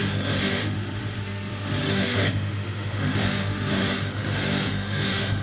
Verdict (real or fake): fake